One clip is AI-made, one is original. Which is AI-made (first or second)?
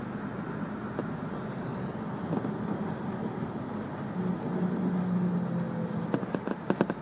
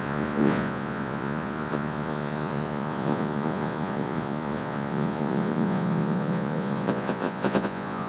second